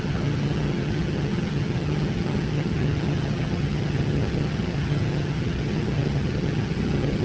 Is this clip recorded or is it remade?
remade